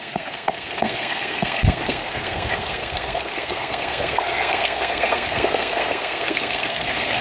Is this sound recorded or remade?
remade